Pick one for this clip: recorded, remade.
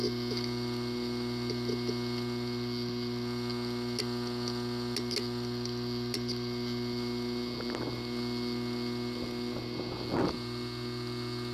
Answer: recorded